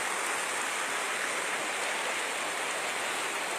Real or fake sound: real